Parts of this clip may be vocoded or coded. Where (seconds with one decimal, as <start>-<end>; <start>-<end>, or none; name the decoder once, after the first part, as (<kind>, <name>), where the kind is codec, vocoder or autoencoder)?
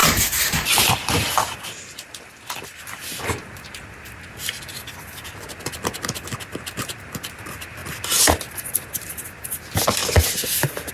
0.0-0.9 (vocoder, BigVGAN v2)